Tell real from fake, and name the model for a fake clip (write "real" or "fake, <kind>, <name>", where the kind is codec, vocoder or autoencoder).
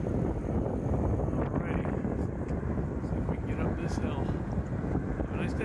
real